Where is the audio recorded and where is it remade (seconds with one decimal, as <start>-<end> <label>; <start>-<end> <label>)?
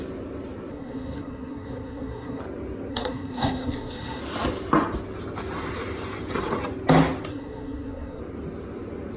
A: 0.0-0.7 recorded; 0.7-2.4 remade; 2.4-2.9 recorded; 2.9-4.2 remade; 4.2-7.3 recorded; 7.3-8.2 remade; 8.2-9.2 recorded